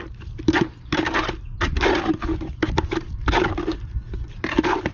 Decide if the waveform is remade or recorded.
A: remade